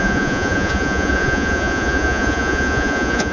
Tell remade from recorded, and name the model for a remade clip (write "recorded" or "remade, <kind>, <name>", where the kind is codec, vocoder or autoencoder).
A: remade, vocoder, Vocos